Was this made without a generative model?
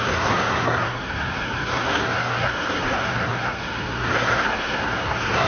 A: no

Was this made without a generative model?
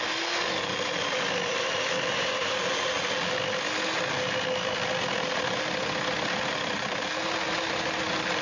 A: yes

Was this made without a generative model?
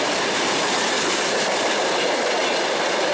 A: no